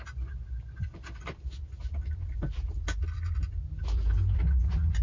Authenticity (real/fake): real